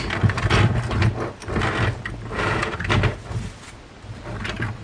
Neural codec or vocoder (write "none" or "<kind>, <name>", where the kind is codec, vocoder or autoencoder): none